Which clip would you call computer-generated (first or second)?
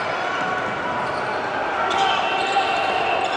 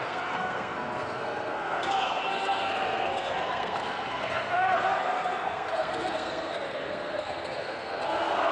second